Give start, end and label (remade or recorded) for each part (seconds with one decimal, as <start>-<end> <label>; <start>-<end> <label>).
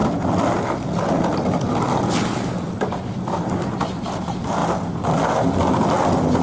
0.0-6.4 recorded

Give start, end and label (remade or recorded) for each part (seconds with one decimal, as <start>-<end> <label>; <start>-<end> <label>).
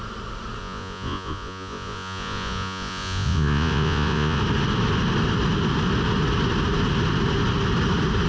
0.0-0.6 recorded; 0.6-4.4 remade; 4.4-8.3 recorded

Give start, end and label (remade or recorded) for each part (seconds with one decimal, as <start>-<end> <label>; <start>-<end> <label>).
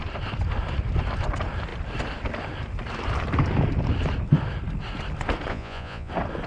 0.0-5.5 recorded; 5.5-6.1 remade; 6.1-6.5 recorded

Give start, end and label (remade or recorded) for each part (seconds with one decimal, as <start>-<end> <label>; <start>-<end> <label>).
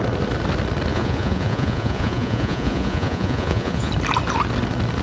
0.0-0.9 recorded; 0.9-3.9 remade; 3.9-5.0 recorded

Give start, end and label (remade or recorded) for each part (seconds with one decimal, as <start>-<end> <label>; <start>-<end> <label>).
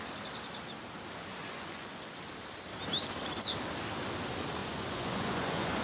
0.0-1.4 recorded; 1.4-2.1 remade; 2.1-4.6 recorded; 4.6-5.8 remade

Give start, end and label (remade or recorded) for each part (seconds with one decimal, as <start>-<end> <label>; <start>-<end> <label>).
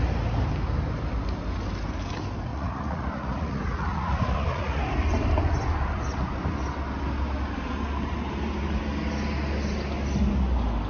0.0-2.5 recorded; 2.5-4.8 remade; 4.8-10.9 recorded